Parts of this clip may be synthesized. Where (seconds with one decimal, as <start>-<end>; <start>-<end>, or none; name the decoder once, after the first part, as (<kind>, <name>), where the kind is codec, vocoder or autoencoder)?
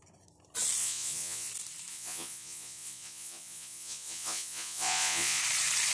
0.8-1.5 (vocoder, Vocos); 1.9-5.4